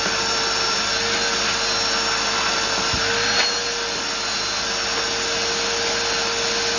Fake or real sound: real